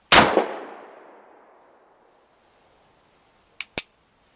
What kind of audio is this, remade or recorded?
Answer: recorded